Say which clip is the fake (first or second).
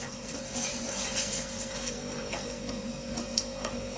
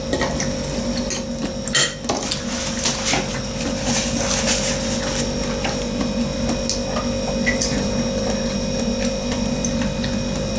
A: first